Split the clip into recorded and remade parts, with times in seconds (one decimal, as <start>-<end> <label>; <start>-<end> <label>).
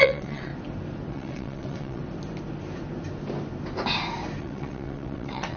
0.0-0.5 remade; 0.5-1.1 recorded; 1.1-2.0 remade; 2.0-4.4 recorded; 4.4-5.6 remade